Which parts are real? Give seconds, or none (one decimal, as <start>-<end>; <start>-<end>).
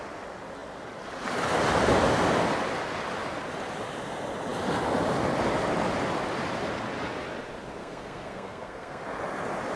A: 0.0-7.8; 9.0-9.8